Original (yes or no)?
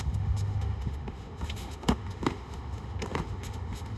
no